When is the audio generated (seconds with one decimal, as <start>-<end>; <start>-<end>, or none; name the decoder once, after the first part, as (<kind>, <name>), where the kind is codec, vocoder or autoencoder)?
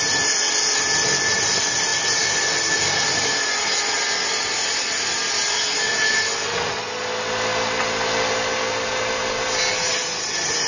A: none